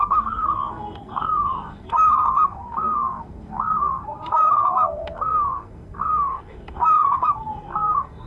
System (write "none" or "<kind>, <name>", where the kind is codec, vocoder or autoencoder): codec, SNAC